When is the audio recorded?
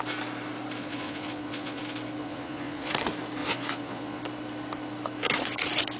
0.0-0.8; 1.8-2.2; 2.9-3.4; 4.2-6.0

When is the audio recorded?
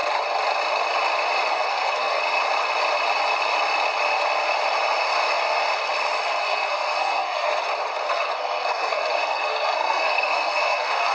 0.0-1.5; 2.2-6.4; 7.5-8.1